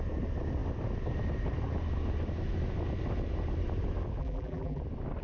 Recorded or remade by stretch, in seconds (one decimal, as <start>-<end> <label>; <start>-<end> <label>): 0.0-4.2 recorded; 4.2-4.8 remade; 4.8-5.2 recorded